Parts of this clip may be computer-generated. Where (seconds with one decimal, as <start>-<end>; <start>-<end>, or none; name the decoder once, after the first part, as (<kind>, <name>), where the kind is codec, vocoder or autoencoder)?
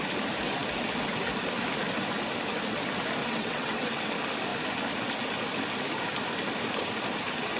3.2-4.1 (vocoder, WaveNeXt)